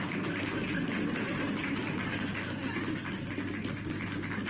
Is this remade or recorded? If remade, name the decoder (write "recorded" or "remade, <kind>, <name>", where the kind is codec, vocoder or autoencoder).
recorded